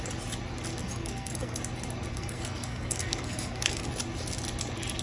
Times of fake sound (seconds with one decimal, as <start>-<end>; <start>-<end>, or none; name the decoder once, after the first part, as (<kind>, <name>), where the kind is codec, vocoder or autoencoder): 0.7-1.6 (codec, SNAC); 2.1-3.9